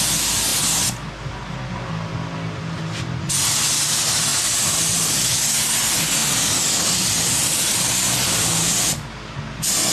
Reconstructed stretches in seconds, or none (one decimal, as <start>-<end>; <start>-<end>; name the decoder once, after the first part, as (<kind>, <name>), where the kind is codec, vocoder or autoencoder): 4.3-5.1 (vocoder, BigVGAN v2)